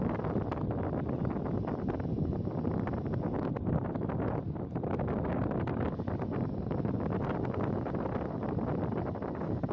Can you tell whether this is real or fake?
real